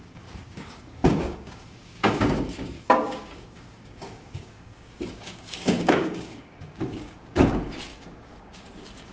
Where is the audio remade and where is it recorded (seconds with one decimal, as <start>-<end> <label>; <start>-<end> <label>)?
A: 0.0-9.1 remade